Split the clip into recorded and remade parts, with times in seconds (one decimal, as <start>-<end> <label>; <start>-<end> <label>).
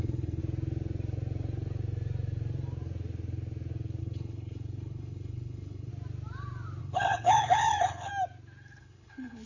0.0-0.4 remade; 0.4-4.0 recorded; 4.0-5.9 remade; 5.9-6.8 recorded; 6.8-8.1 remade; 8.1-8.8 recorded; 8.8-9.5 remade